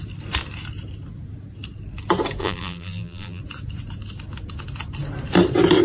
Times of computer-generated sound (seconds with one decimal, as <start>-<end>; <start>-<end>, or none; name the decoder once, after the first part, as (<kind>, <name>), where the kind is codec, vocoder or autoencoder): 2.4-3.4 (vocoder, BigVGAN v2)